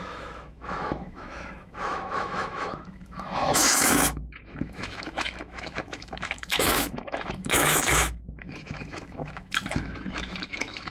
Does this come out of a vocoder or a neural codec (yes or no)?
yes